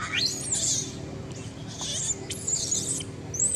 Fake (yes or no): no